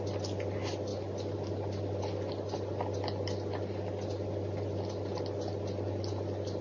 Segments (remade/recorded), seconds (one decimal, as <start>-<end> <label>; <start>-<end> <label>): 0.0-6.6 recorded